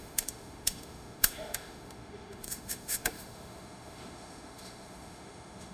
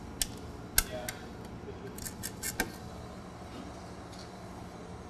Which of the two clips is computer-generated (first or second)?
first